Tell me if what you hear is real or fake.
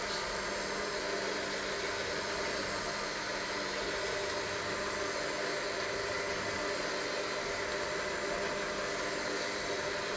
real